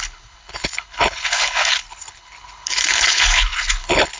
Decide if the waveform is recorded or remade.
remade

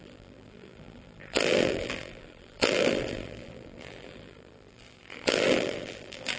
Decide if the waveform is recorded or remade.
remade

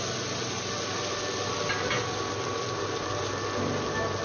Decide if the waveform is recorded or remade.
recorded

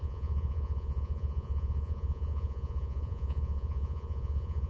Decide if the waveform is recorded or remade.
remade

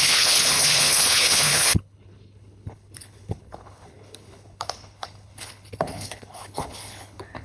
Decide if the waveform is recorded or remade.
remade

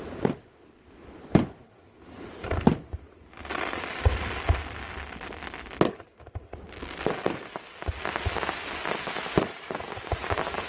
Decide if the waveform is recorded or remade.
recorded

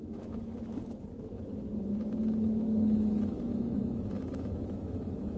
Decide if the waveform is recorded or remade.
remade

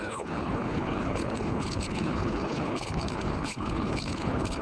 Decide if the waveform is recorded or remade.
remade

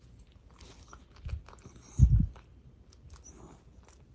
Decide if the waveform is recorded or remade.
recorded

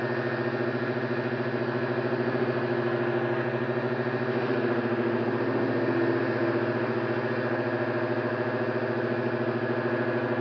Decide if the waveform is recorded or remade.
recorded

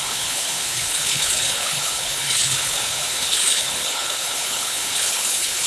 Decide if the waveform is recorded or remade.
remade